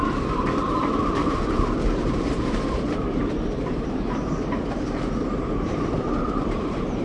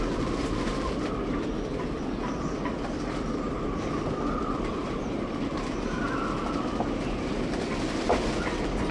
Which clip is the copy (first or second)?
first